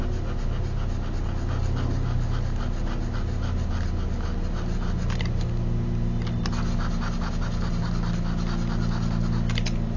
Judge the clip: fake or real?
real